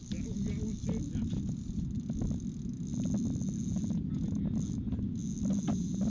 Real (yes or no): yes